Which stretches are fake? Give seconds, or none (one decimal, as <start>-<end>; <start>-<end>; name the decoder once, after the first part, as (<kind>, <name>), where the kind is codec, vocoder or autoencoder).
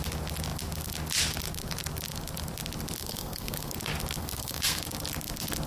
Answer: 3.0-3.7 (codec, SNAC); 4.2-4.8